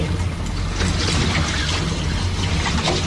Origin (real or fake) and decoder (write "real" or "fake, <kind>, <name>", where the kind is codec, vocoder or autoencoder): real